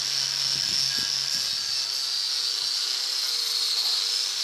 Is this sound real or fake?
real